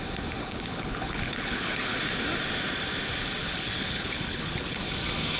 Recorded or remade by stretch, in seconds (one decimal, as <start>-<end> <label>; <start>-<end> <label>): 0.0-0.4 recorded; 0.4-2.0 remade; 2.0-3.4 recorded; 3.4-4.8 remade; 4.8-5.4 recorded